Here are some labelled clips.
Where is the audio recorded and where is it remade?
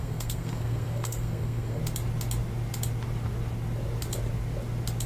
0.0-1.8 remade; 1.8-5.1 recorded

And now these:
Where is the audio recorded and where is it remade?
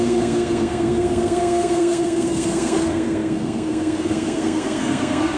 0.0-5.4 remade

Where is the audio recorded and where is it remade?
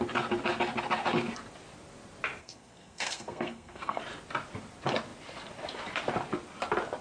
0.0-2.4 recorded; 2.4-4.0 remade; 4.0-7.0 recorded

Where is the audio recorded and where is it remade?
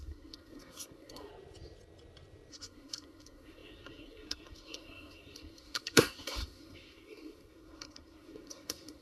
0.0-1.3 remade; 1.3-2.5 recorded; 2.5-9.0 remade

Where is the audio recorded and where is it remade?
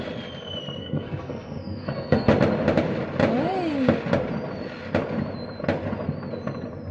0.0-0.8 recorded; 0.8-2.3 remade; 2.3-6.9 recorded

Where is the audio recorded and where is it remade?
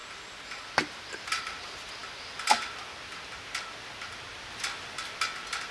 0.0-5.7 recorded